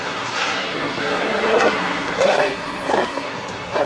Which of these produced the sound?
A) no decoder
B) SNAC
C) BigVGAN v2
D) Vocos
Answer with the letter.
B